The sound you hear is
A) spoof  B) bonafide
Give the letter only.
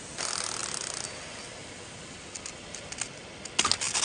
B